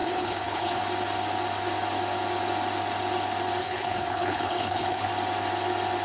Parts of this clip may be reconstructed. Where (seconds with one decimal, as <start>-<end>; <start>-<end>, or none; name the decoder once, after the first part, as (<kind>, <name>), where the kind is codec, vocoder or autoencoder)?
0.0-0.8 (codec, HILCodec); 3.6-5.1